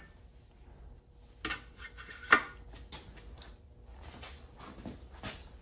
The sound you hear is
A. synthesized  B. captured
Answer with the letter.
B